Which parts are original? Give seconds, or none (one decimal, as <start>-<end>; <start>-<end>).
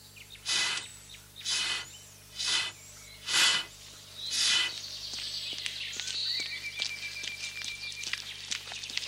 0.0-9.1